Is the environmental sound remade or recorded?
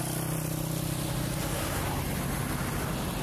recorded